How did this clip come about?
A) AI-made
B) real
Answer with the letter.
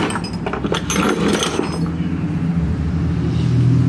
B